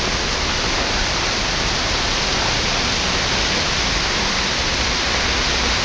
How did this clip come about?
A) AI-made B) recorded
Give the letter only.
B